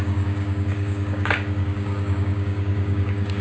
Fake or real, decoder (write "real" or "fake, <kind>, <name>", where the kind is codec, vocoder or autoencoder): fake, codec, DAC